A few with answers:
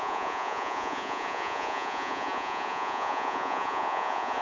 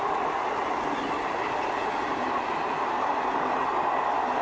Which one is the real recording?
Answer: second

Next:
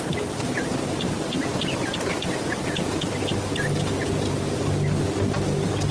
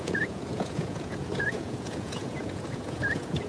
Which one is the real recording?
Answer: first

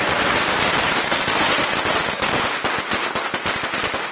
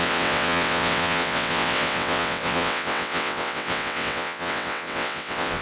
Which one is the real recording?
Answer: first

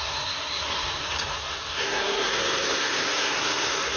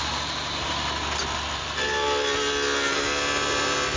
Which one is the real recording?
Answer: second